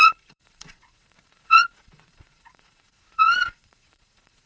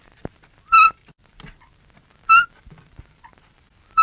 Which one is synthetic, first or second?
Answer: first